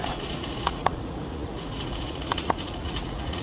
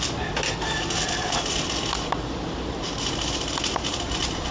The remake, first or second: first